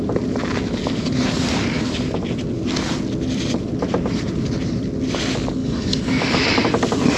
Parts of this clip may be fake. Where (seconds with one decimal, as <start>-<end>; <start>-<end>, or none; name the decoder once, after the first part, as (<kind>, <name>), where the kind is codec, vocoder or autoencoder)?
5.6-6.6 (codec, DAC)